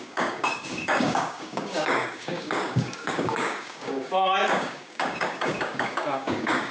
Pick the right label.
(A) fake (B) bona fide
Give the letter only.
A